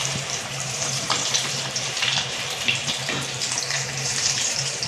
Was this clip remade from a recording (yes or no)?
yes